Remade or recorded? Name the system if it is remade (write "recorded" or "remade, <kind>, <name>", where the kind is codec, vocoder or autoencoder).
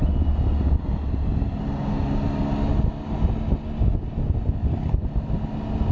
recorded